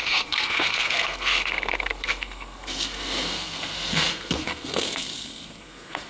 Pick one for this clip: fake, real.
fake